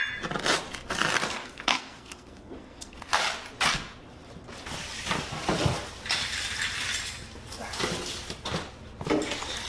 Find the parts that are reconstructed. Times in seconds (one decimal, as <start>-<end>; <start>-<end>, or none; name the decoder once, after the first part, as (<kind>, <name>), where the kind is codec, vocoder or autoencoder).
1.4-3.2 (codec, SNAC)